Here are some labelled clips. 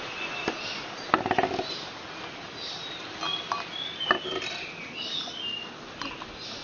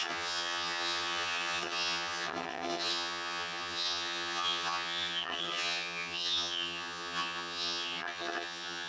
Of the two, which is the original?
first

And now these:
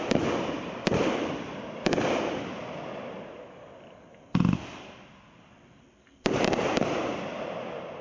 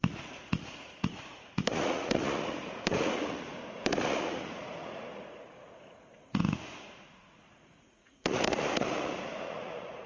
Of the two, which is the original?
first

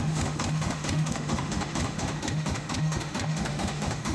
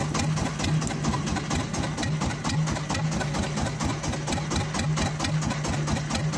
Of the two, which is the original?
second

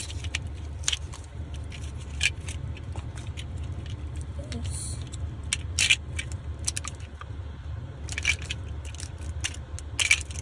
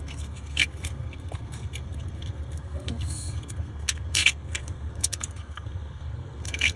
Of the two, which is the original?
first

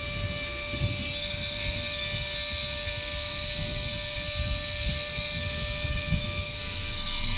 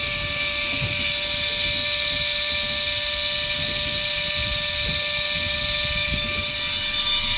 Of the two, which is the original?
second